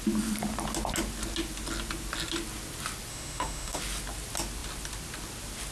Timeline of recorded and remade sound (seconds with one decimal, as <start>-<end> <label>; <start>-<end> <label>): 0.0-3.1 recorded; 3.1-3.8 remade; 3.8-5.7 recorded